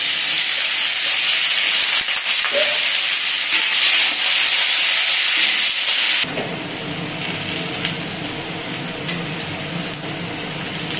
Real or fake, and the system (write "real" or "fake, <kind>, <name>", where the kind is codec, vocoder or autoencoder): real